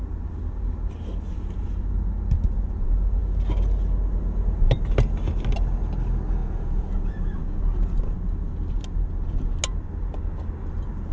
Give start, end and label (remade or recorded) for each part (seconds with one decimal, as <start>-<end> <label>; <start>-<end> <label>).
0.0-6.4 recorded; 6.4-7.6 remade; 7.6-11.1 recorded